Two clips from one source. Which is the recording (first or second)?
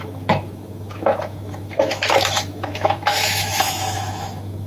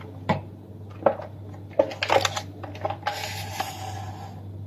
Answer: second